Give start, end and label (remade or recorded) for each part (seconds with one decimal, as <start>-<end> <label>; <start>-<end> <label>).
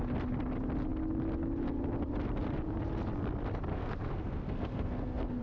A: 0.0-3.7 recorded; 3.7-5.4 remade